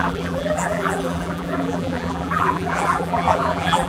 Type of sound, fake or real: fake